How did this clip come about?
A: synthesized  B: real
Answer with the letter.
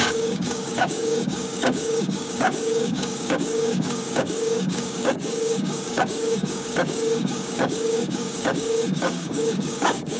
A